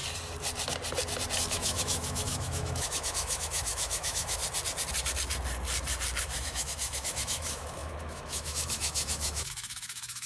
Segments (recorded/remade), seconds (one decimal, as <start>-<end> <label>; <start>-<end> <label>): 0.0-1.5 recorded; 1.5-4.4 remade; 4.4-6.2 recorded; 6.2-10.3 remade